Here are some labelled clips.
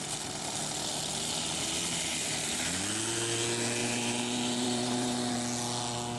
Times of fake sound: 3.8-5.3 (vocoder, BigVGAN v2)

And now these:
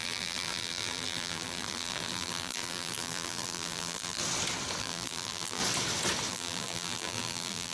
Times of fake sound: 0.0-4.2 (vocoder, BigVGAN v2); 4.8-5.6; 6.3-7.7